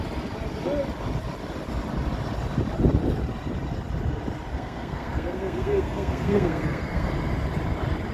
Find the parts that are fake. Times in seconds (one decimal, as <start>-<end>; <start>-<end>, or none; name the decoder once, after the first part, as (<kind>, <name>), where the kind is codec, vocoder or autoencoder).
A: 4.5-7.1 (codec, SNAC)